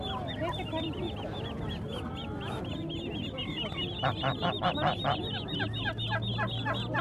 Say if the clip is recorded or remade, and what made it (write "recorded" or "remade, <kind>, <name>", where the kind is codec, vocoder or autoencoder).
recorded